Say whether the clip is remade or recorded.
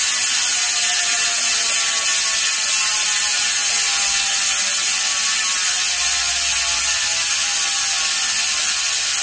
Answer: recorded